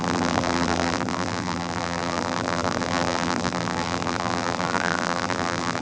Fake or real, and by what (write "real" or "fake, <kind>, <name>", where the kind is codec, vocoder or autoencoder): fake, vocoder, BigVGAN v2